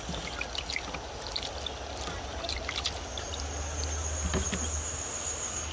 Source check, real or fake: real